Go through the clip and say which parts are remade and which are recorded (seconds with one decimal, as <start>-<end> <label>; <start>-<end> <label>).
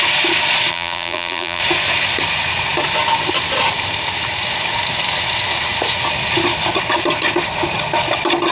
0.0-0.7 recorded; 0.7-1.6 remade; 1.6-8.5 recorded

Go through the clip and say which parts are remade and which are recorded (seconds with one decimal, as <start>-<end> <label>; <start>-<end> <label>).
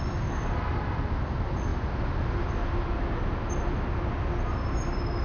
0.0-5.2 recorded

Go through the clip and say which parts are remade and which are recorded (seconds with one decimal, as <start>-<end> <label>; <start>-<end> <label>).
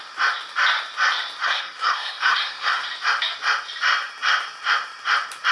0.0-1.4 recorded; 1.4-2.8 remade; 2.8-5.5 recorded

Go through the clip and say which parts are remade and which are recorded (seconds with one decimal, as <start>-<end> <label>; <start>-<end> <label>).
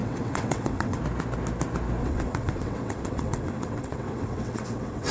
0.0-1.0 remade; 1.0-2.0 recorded; 2.0-5.1 remade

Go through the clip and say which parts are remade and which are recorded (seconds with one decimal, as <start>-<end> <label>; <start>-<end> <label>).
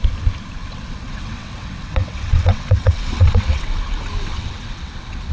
0.0-0.6 recorded; 0.6-3.7 remade; 3.7-4.2 recorded; 4.2-5.3 remade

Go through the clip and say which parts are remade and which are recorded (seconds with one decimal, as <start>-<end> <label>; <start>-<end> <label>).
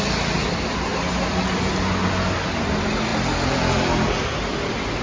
0.0-5.0 recorded